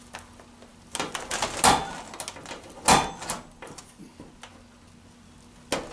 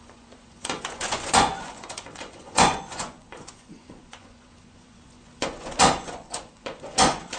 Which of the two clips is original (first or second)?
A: first